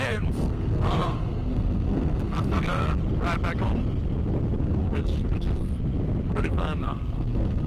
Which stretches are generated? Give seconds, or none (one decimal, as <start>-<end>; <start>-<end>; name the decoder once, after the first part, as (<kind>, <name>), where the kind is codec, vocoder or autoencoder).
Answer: 0.0-3.0 (codec, SNAC); 4.6-5.7; 6.3-7.7